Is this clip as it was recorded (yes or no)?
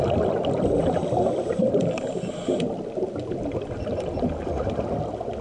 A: yes